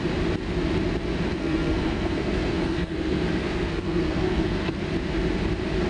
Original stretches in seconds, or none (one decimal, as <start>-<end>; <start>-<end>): 0.0-1.3; 4.8-5.9